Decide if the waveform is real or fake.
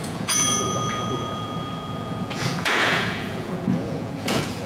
fake